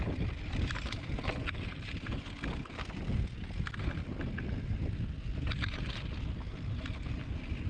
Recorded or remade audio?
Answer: recorded